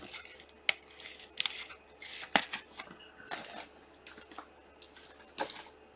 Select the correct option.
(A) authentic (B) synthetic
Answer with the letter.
A